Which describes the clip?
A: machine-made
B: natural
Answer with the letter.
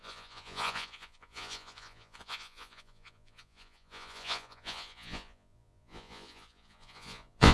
A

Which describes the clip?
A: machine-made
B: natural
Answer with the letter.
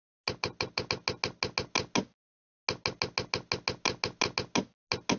B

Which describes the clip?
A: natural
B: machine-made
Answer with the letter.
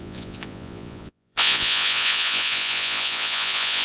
B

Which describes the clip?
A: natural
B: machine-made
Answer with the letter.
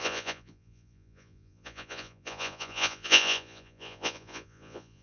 B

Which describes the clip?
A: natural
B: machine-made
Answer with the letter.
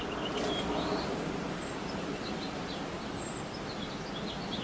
A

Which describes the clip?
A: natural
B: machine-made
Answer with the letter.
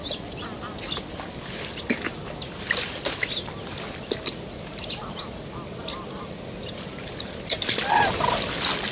A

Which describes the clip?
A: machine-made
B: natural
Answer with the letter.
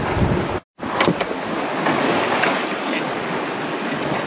B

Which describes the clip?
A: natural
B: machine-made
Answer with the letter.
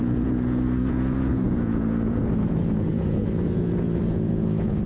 B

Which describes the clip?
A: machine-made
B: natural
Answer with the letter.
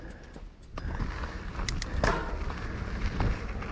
B